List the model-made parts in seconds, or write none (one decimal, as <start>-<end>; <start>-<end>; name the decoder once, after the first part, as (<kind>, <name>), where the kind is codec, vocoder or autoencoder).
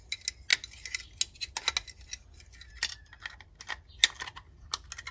none